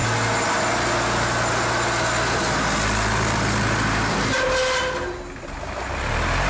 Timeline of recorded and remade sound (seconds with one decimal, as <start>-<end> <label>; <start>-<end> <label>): 0.0-6.5 recorded